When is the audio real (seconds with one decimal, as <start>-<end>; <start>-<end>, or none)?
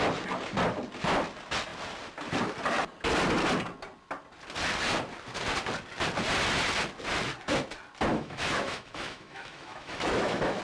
0.0-8.1